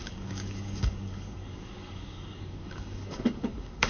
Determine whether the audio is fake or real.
fake